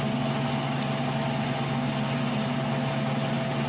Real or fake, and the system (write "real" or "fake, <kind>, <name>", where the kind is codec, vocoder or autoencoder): real